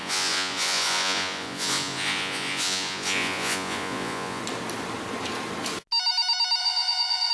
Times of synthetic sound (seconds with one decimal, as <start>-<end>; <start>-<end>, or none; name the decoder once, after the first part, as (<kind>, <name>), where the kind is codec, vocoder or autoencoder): 0.0-4.4 (vocoder, Vocos); 6.6-7.3